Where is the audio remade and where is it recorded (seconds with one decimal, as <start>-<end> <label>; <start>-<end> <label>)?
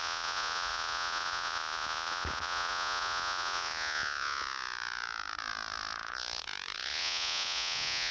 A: 0.0-8.1 remade